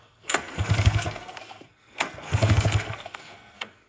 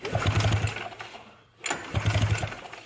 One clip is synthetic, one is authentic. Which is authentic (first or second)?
second